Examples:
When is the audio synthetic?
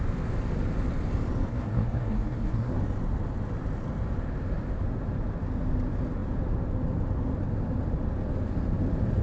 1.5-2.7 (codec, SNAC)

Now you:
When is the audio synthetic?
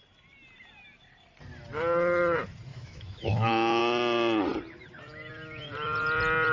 2.7-3.8 (autoencoder, DAC-VAE)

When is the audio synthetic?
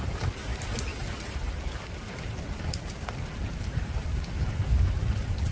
0.9-4.2 (vocoder, BigVGAN v2)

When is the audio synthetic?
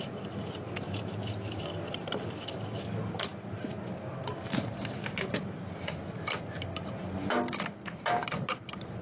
none